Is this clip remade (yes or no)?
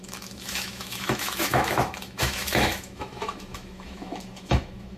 yes